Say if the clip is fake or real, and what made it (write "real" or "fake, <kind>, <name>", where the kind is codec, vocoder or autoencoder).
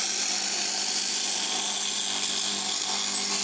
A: real